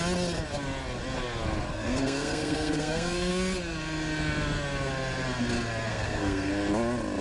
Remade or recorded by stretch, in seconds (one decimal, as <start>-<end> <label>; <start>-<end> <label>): 0.0-1.7 recorded; 1.7-3.3 remade; 3.3-5.9 recorded; 5.9-6.5 remade; 6.5-7.2 recorded

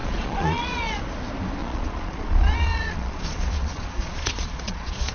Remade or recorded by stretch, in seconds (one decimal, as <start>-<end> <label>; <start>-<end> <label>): 0.0-1.0 remade; 1.0-1.6 recorded; 1.6-5.1 remade

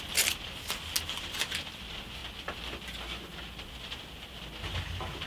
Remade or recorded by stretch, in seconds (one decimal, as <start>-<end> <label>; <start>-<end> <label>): 0.0-5.3 recorded

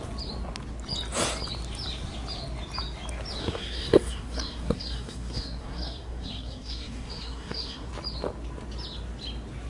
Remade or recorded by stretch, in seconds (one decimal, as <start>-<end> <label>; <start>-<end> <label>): 0.0-3.4 recorded; 3.4-7.9 remade; 7.9-9.7 recorded

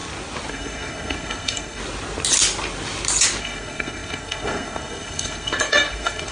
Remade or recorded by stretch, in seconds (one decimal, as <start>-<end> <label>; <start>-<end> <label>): 0.0-0.5 recorded; 0.5-1.8 remade; 1.8-3.4 recorded; 3.4-6.3 remade

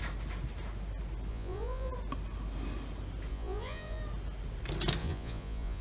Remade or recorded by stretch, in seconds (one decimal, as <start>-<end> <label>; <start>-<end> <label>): 0.0-1.3 recorded; 1.3-1.9 remade; 1.9-3.3 recorded; 3.3-4.0 remade; 4.0-5.0 recorded; 5.0-5.8 remade

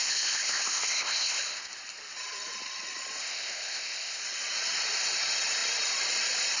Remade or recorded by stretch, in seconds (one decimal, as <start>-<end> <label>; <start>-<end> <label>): 0.0-1.7 remade; 1.7-3.2 recorded; 3.2-4.2 remade; 4.2-6.6 recorded